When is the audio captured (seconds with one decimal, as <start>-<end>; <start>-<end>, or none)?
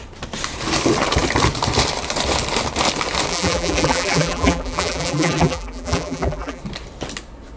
0.0-3.3; 6.6-7.6